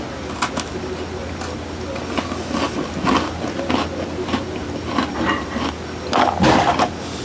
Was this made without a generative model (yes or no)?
yes